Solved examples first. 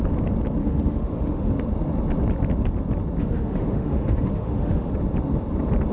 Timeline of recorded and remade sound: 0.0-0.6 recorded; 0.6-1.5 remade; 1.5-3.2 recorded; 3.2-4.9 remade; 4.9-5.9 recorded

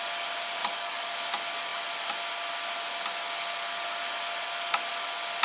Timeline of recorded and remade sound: 0.0-0.6 recorded; 0.6-1.1 remade; 1.1-5.4 recorded